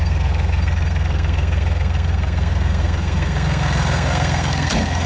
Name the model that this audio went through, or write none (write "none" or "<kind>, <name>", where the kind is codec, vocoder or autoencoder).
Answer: codec, SNAC